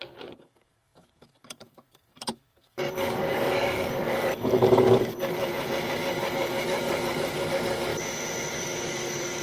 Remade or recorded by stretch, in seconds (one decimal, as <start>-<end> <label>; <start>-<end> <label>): 0.0-5.4 remade; 5.4-6.1 recorded; 6.1-7.9 remade; 7.9-8.5 recorded; 8.5-9.4 remade